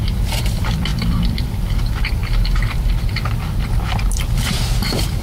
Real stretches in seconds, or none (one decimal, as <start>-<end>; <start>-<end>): none